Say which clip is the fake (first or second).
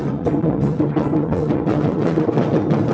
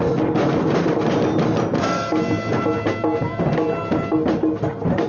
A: first